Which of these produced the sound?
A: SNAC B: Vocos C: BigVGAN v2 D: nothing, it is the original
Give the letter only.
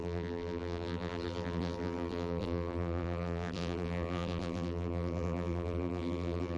C